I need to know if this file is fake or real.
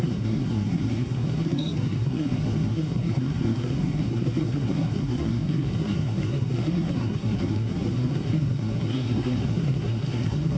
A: fake